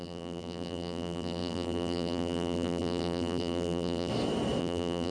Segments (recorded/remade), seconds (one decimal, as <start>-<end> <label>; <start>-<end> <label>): 0.0-4.1 remade; 4.1-4.6 recorded; 4.6-5.1 remade